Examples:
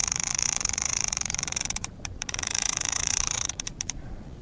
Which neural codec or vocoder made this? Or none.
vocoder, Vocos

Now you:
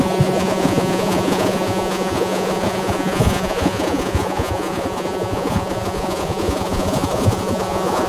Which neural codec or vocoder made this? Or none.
vocoder, Vocos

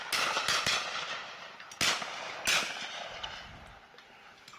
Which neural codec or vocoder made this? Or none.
none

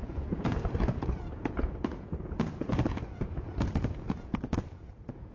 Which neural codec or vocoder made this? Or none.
vocoder, Vocos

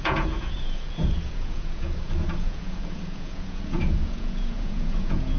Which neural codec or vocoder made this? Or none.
vocoder, Vocos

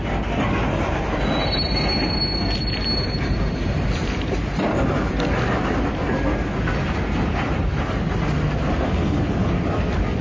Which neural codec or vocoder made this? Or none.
none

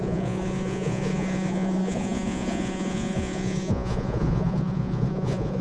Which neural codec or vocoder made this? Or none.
vocoder, Vocos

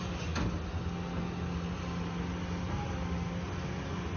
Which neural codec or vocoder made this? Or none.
none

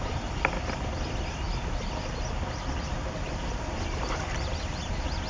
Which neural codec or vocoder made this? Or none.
none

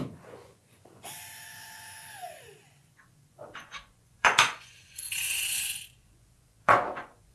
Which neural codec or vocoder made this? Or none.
vocoder, Vocos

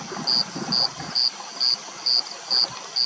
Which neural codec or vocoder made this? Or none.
none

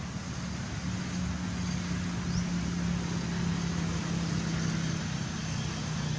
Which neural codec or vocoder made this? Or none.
none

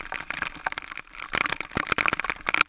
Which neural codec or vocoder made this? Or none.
none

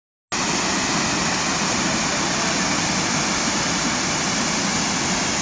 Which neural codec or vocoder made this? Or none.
none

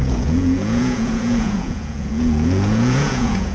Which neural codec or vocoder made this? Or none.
vocoder, Vocos